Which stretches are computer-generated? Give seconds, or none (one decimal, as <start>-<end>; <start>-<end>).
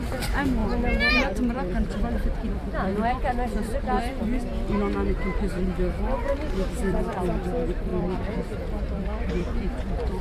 0.0-0.6; 1.1-2.9; 3.8-4.5; 5.5-10.2